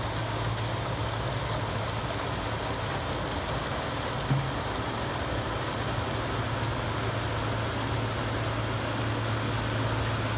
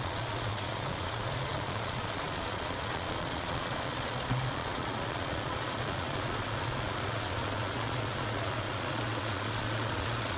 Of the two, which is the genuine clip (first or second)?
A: first